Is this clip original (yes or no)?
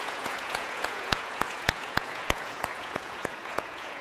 no